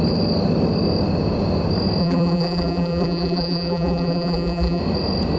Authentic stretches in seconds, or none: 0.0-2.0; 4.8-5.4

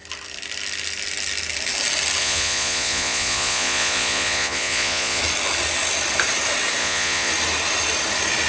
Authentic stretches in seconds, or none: 0.0-2.2; 5.2-6.8; 7.3-8.5

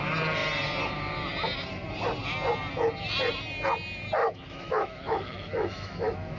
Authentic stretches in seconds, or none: 0.0-4.2

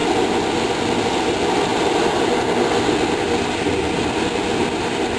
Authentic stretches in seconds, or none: 0.0-5.2